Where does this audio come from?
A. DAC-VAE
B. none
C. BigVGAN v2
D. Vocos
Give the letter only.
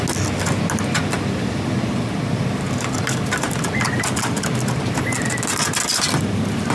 B